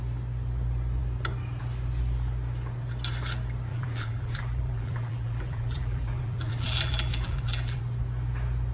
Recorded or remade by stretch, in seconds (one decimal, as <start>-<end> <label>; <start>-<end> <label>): 0.0-3.7 recorded; 3.7-7.8 remade; 7.8-8.7 recorded